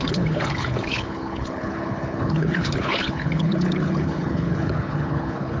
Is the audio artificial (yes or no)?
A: yes